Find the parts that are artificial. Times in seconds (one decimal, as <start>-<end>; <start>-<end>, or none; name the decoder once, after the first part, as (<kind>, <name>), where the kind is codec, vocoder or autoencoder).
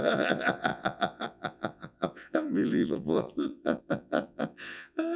0.0-5.2 (vocoder, Vocos)